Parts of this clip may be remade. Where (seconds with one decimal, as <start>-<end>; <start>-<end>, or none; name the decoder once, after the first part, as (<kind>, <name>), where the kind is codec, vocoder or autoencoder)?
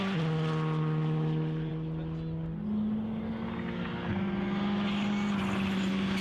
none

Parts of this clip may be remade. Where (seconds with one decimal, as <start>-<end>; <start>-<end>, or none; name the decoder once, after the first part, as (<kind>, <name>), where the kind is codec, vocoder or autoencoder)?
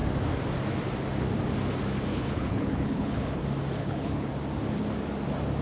2.1-3.4 (codec, HILCodec); 3.8-4.3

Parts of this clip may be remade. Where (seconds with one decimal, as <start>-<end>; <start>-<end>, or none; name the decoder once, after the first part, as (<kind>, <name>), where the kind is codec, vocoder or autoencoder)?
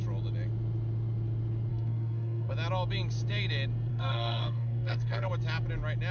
1.7-2.5 (codec, SNAC); 3.9-5.3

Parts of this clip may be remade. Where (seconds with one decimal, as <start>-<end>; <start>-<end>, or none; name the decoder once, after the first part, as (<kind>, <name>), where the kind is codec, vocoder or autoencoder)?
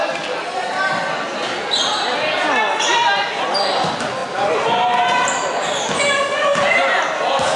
none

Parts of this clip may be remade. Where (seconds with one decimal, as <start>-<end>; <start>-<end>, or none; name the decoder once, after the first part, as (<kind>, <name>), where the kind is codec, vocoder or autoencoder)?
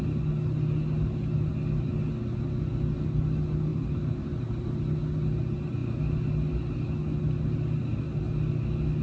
3.7-4.5 (vocoder, BigVGAN v2)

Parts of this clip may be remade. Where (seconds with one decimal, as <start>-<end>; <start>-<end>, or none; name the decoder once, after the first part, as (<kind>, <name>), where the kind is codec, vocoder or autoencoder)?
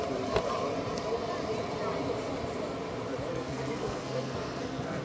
3.3-5.0 (codec, SNAC)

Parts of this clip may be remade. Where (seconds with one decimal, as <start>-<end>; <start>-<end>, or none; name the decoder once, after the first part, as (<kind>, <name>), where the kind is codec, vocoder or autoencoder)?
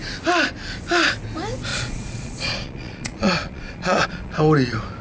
1.7-4.4 (vocoder, Vocos)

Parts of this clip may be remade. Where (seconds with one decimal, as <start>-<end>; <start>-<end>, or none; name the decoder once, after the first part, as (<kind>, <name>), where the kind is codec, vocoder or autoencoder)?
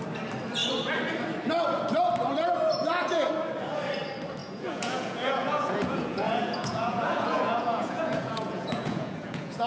2.8-3.3 (vocoder, Vocos); 4.4-9.7